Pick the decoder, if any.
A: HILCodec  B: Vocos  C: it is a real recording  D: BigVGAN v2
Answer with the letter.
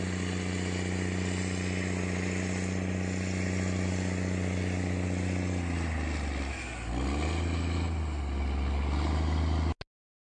C